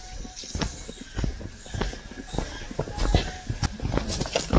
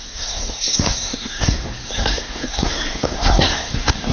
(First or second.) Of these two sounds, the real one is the first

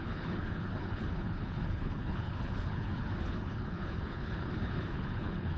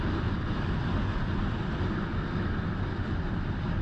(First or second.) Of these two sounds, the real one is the second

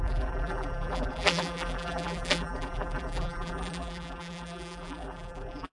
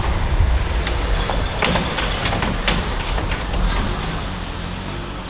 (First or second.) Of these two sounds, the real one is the second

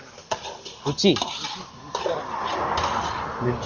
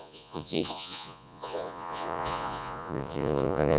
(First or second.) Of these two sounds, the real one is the first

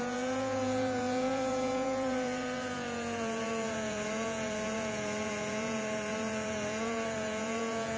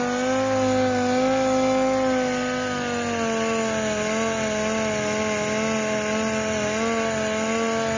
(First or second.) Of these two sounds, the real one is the second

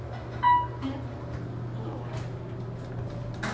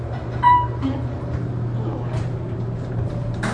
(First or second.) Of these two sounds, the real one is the first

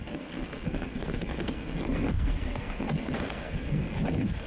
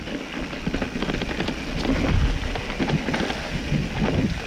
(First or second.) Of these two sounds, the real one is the second